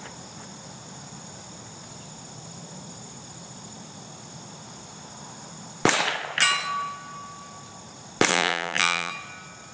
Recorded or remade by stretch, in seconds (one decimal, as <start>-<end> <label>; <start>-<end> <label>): 0.0-8.3 recorded; 8.3-9.1 remade; 9.1-9.7 recorded

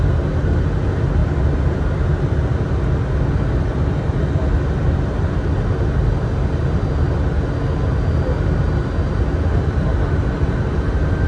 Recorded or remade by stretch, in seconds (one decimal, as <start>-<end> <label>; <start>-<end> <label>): 0.0-11.3 recorded

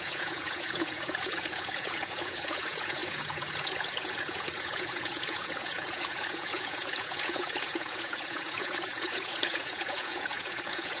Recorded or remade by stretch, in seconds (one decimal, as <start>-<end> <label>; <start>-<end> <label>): 0.0-11.0 remade

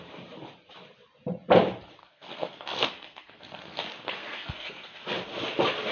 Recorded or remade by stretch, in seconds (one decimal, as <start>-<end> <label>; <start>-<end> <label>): 0.0-2.0 recorded; 2.0-3.8 remade; 3.8-4.2 recorded; 4.2-5.0 remade; 5.0-5.9 recorded

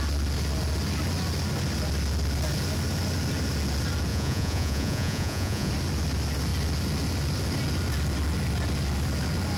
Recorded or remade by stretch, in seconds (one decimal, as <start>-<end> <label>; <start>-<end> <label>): 0.0-4.1 recorded; 4.1-5.7 remade; 5.7-9.6 recorded

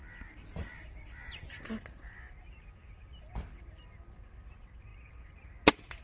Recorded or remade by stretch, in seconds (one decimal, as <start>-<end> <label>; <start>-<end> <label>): 0.0-6.0 recorded

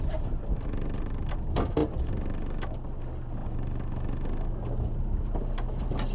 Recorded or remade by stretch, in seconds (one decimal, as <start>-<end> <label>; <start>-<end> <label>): 0.0-6.1 recorded

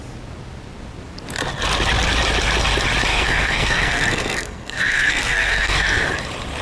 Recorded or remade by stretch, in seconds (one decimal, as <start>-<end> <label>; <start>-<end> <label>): 0.0-3.1 recorded; 3.1-6.1 remade; 6.1-6.6 recorded